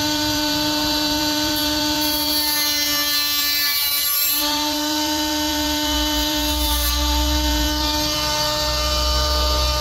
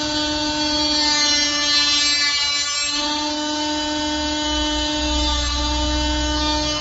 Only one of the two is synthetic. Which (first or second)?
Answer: first